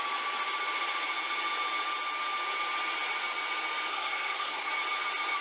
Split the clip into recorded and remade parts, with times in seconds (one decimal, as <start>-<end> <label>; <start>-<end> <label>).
0.0-3.9 recorded; 3.9-4.7 remade; 4.7-5.4 recorded